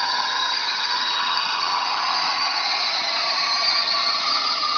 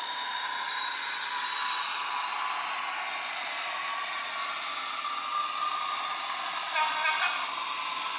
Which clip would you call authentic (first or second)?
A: second